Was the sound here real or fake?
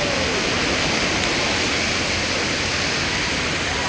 real